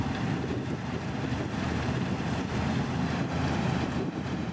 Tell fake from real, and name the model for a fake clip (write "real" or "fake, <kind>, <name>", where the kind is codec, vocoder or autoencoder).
fake, vocoder, BigVGAN v2